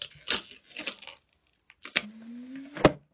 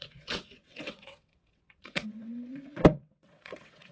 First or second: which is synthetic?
second